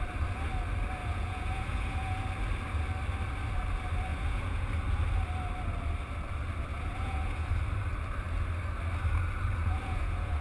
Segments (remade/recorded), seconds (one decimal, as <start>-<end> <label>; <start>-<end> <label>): 0.0-1.0 recorded; 1.0-2.2 remade; 2.2-4.1 recorded; 4.1-4.7 remade; 4.7-6.7 recorded; 6.7-7.5 remade; 7.5-9.6 recorded; 9.6-10.4 remade